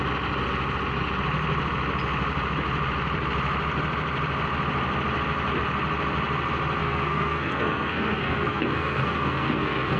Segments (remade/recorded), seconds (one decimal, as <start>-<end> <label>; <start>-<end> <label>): 0.0-6.8 recorded; 6.8-10.0 remade